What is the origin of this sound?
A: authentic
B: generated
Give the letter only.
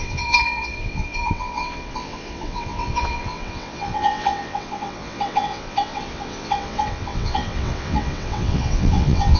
B